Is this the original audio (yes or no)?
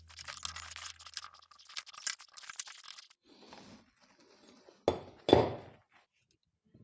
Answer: yes